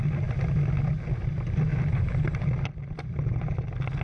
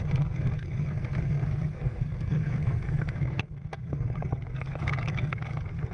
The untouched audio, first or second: first